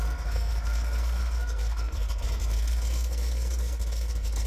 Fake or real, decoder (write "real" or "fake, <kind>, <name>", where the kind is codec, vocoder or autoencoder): fake, codec, SNAC